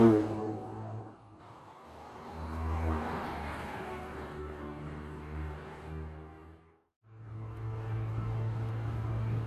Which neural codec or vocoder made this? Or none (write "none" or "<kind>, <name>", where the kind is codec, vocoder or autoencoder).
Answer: codec, DAC